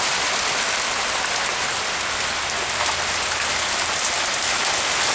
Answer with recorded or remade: recorded